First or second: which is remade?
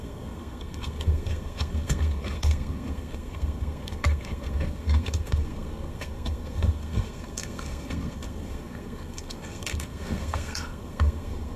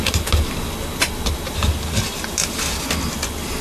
first